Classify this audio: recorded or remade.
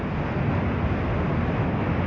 recorded